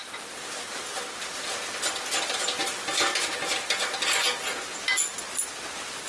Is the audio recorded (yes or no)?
yes